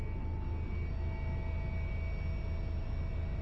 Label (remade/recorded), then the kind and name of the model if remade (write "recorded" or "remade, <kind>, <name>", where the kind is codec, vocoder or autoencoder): recorded